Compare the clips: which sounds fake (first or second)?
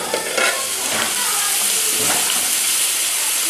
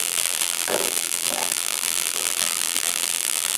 second